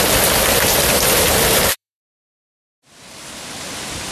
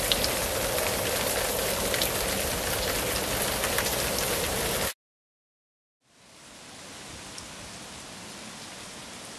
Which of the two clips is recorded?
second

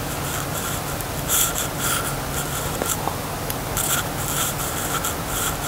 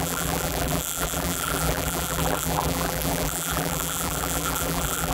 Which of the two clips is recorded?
first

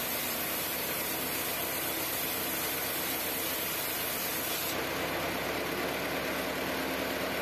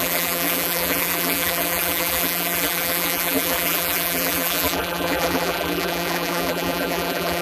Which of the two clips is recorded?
first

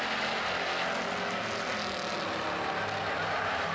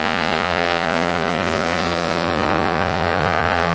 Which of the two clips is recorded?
first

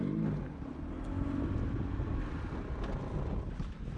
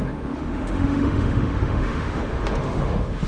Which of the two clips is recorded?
first